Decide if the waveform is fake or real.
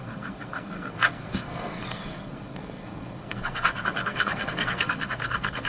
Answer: fake